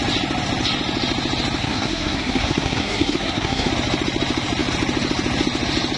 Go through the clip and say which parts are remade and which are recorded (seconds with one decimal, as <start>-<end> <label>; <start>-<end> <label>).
0.0-1.6 recorded; 1.6-3.7 remade; 3.7-6.0 recorded

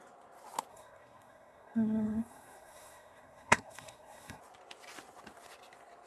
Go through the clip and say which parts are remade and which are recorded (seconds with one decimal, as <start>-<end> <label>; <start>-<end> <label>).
0.0-0.7 recorded; 0.7-4.4 remade; 4.4-6.1 recorded

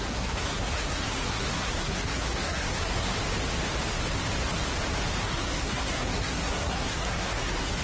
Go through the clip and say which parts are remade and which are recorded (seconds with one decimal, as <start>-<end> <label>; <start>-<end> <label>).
0.0-3.1 remade; 3.1-5.2 recorded; 5.2-7.8 remade